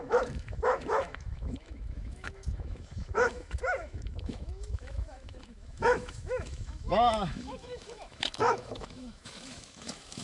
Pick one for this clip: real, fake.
fake